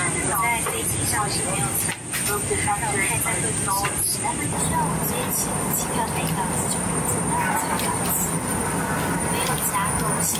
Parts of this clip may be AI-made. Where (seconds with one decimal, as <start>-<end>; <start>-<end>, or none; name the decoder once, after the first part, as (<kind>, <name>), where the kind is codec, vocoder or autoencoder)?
none

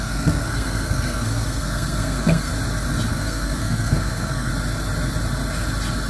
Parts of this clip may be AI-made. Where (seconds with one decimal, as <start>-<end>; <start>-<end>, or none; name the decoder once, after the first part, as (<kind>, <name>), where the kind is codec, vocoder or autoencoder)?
0.0-2.5 (codec, SNAC); 3.1-4.5